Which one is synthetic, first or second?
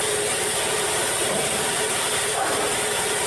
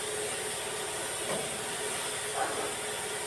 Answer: first